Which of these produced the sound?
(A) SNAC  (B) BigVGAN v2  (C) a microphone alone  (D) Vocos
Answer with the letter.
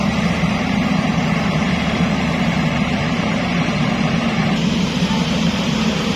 B